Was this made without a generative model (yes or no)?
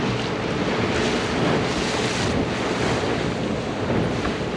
yes